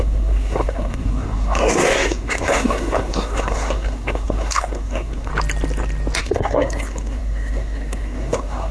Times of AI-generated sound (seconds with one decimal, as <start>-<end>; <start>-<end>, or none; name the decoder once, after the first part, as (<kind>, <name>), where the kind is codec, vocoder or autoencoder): 0.0-5.3 (codec, SNAC); 6.2-8.7